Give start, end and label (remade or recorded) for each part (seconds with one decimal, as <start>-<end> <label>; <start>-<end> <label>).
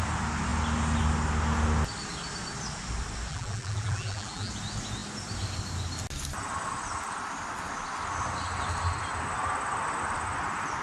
0.0-3.3 recorded; 3.3-4.5 remade; 4.5-10.8 recorded